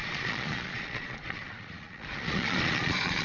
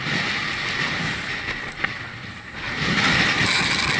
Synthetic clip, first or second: first